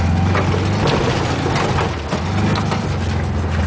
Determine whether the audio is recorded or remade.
recorded